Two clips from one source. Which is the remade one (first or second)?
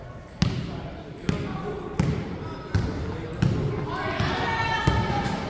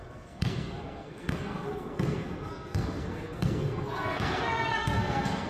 second